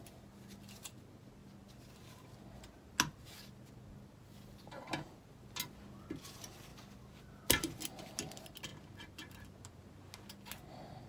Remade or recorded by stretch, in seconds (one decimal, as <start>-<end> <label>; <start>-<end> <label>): 0.0-11.1 recorded